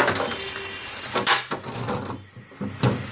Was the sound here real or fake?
real